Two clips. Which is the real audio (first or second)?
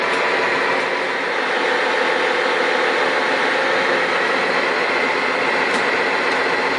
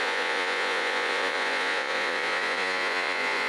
first